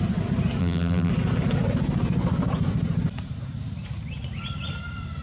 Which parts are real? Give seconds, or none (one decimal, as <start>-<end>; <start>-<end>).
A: 0.0-0.6; 1.1-5.2

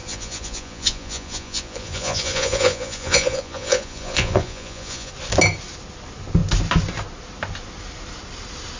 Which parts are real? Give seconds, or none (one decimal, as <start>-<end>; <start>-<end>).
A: 5.1-8.8

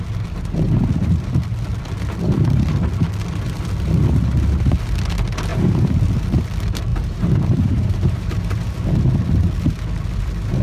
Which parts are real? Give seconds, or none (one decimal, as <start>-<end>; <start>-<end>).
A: 0.0-5.5; 6.0-6.9; 8.4-10.6

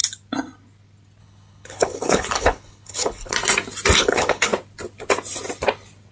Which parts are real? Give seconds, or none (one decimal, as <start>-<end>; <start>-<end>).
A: 0.0-1.2; 3.3-4.0; 4.5-6.1

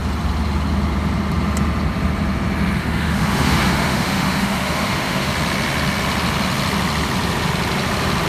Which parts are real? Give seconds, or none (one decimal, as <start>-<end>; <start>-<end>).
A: 0.0-2.8; 5.3-8.3